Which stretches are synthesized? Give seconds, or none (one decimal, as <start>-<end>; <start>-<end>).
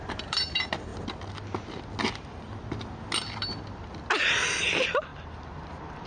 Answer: 0.0-0.9; 4.6-6.1